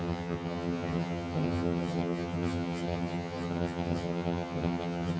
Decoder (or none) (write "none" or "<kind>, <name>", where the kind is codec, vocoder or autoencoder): vocoder, HiFi-GAN